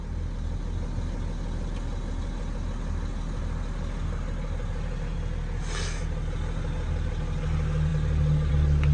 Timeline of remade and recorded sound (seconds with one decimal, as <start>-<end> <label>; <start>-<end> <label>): 0.0-8.9 recorded